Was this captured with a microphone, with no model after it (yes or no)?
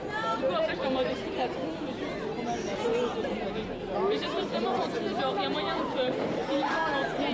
yes